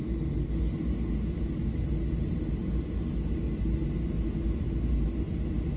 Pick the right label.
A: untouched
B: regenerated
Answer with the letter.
A